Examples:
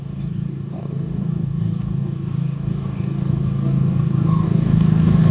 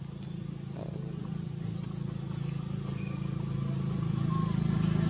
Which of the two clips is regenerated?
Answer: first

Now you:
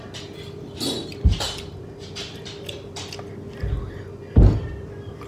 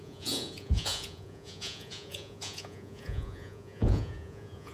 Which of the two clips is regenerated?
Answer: second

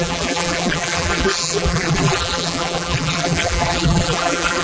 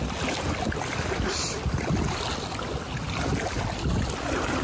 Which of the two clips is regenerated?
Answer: first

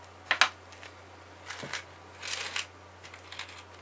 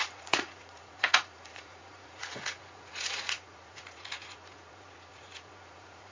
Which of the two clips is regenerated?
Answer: second